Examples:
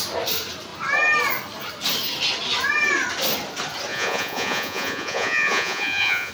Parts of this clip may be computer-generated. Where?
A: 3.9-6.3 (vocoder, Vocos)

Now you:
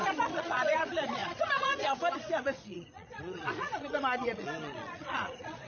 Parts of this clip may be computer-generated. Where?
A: 0.0-5.7 (vocoder, Vocos)

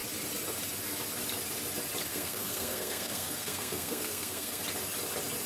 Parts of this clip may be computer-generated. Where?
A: 2.1-4.6 (codec, SNAC)